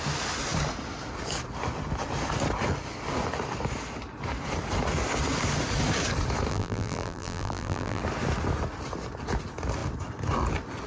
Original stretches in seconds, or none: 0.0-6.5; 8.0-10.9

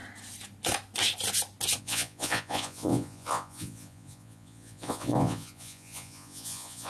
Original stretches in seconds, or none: 0.0-1.8

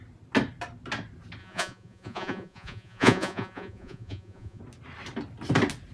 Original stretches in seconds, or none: 0.0-1.4; 4.6-5.9

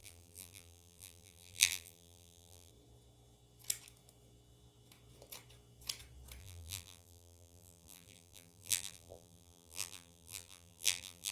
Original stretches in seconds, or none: 2.7-6.4